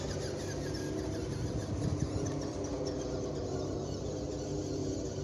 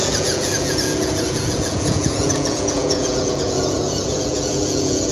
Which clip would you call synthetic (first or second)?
second